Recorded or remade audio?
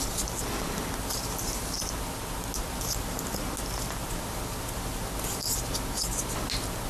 recorded